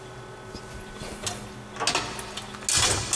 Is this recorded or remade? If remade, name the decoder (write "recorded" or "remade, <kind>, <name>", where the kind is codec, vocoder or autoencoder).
recorded